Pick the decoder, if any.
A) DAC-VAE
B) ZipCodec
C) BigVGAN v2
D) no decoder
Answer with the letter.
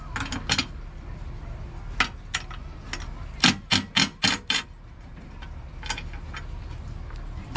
D